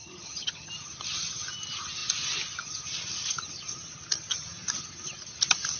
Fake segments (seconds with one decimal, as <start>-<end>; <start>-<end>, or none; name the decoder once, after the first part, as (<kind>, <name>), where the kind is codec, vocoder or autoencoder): 0.0-0.7 (vocoder, HiFi-GAN)